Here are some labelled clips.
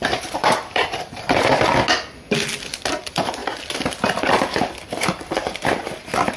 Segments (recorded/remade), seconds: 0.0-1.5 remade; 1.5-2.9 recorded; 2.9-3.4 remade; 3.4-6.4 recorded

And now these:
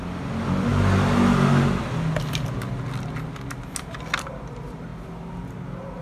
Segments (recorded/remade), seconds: 0.0-6.0 recorded

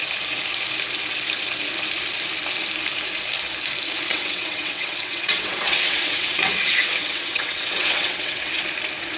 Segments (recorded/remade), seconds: 0.0-4.1 recorded; 4.1-8.5 remade; 8.5-9.2 recorded

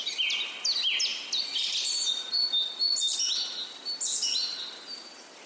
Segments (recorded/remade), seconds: 0.0-5.5 recorded

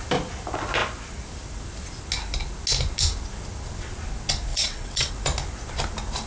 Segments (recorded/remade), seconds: 0.0-4.5 recorded; 4.5-5.1 remade; 5.1-6.3 recorded

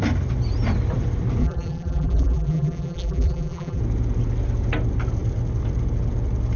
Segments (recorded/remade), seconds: 0.0-1.4 recorded; 1.4-3.8 remade; 3.8-6.6 recorded